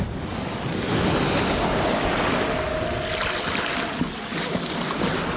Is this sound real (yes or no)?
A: yes